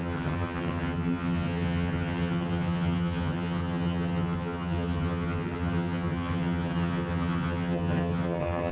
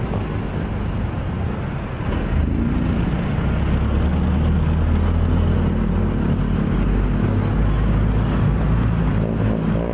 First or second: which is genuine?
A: second